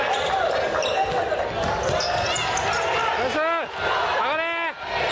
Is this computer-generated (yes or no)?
no